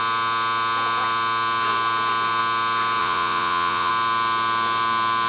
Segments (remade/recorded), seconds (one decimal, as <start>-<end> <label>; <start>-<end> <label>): 0.0-3.0 recorded; 3.0-3.9 remade; 3.9-5.3 recorded